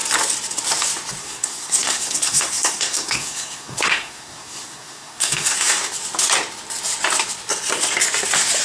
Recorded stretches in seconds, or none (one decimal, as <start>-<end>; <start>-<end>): 0.0-1.2; 5.9-8.6

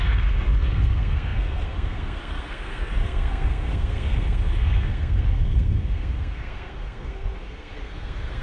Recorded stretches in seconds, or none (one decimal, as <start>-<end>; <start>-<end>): none

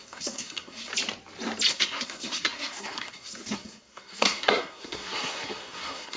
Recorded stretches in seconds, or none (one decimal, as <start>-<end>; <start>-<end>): 0.9-1.7

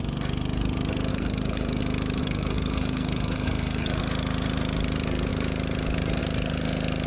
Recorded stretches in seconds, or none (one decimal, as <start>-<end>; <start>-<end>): 0.0-1.1; 1.8-2.2; 4.0-7.1

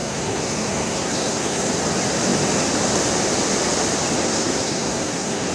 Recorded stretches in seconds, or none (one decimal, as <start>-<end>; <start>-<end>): 1.7-4.2

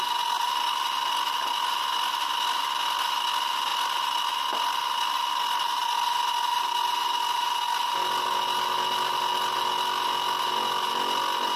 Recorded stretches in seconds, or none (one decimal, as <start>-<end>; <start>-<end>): 0.0-11.6

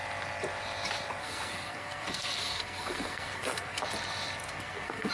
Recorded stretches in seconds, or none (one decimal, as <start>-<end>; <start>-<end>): 0.0-1.2; 3.8-4.4